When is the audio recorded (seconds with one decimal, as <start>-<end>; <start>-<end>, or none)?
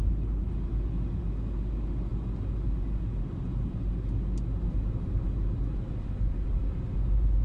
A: 0.0-7.4